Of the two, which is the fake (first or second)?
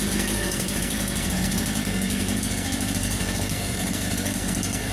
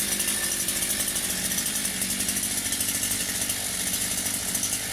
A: first